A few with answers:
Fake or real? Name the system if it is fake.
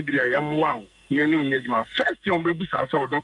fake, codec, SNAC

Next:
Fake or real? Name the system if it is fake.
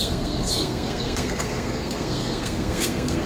fake, codec, SNAC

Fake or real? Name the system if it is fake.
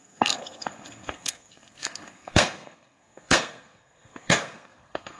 fake, codec, SNAC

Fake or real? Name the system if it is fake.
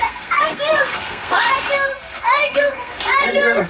fake, codec, SNAC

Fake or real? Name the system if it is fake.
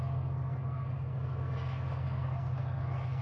fake, codec, SNAC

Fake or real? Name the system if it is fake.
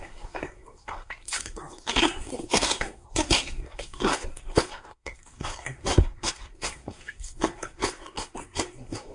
fake, codec, SNAC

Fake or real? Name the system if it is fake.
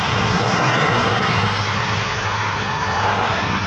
fake, codec, SNAC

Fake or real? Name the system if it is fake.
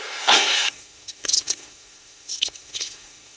fake, codec, SNAC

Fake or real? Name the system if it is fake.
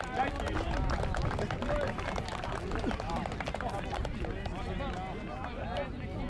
real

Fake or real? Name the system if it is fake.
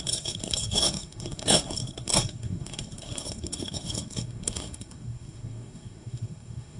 fake, codec, SNAC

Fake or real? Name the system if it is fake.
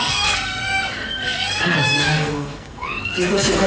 fake, codec, SNAC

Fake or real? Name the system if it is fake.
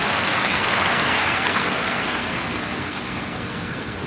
fake, codec, SNAC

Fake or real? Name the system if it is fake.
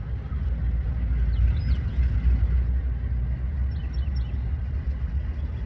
real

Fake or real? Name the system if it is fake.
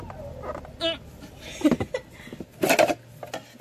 real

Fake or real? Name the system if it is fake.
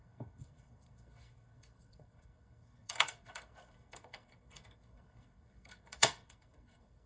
fake, codec, SNAC